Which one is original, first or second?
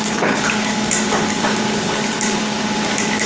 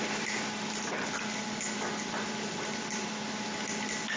second